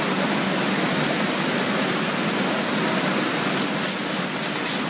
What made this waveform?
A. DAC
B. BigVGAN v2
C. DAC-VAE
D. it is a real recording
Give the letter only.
D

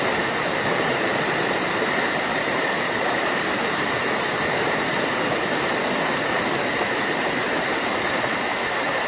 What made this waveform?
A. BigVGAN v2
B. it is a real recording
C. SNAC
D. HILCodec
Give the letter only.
A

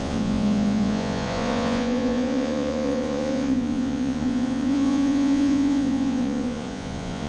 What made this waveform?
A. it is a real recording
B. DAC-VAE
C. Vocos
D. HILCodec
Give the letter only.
C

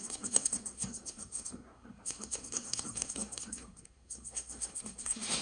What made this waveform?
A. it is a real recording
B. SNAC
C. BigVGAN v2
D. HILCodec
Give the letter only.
B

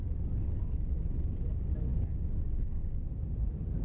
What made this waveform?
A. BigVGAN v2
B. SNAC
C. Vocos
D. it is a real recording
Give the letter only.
D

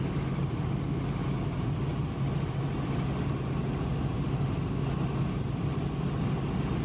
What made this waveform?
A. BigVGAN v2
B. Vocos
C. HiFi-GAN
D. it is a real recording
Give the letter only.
D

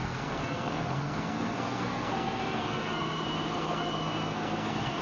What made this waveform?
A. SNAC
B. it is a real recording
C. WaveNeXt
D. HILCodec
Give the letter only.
A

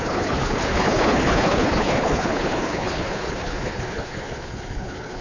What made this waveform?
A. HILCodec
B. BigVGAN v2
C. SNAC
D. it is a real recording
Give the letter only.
A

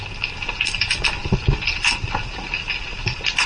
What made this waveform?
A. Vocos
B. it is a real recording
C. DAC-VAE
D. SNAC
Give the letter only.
B